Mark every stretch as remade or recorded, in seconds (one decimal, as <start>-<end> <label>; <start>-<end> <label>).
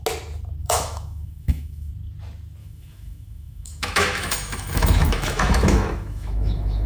0.0-0.6 recorded; 0.6-1.9 remade; 1.9-2.6 recorded; 2.6-6.9 remade